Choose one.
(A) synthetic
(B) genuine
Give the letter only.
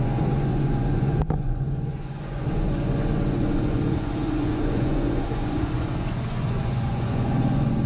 A